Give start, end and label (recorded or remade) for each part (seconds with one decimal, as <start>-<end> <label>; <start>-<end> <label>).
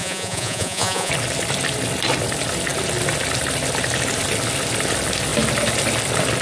0.0-1.1 remade; 1.1-6.4 recorded